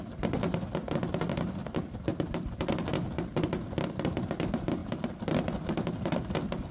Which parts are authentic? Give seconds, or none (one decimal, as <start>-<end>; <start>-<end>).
0.0-6.7